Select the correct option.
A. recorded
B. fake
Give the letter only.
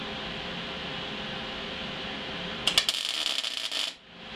A